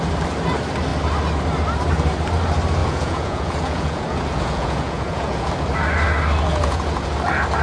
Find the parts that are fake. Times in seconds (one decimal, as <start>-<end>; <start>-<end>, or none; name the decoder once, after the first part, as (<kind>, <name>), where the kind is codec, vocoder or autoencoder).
2.8-5.5 (vocoder, Vocos); 6.5-7.1